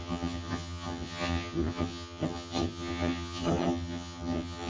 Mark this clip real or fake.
fake